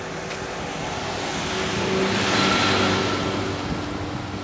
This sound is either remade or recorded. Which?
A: recorded